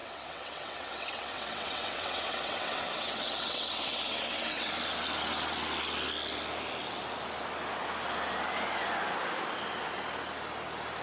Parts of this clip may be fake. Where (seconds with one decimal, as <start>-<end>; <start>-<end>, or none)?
0.0-4.7